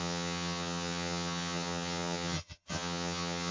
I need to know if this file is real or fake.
fake